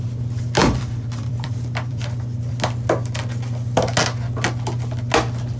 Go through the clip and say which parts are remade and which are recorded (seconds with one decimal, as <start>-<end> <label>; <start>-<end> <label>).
0.0-0.6 recorded; 0.6-2.5 remade; 2.5-5.6 recorded